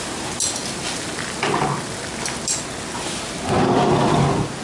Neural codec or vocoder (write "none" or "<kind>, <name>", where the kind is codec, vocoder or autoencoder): none